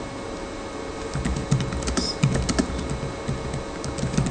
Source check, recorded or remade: recorded